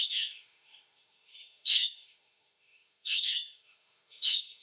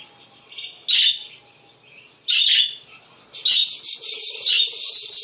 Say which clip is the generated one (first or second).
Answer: first